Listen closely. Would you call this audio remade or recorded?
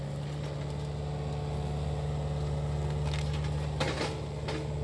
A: recorded